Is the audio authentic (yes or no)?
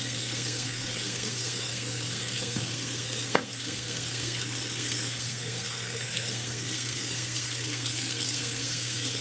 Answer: no